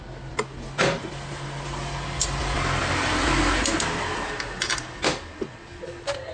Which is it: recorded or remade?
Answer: recorded